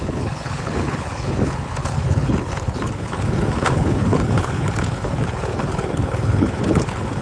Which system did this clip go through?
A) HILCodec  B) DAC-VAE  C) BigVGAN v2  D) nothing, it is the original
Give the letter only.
A